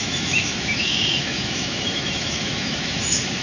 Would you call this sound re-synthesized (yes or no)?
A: yes